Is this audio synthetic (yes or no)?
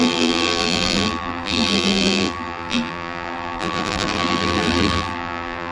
yes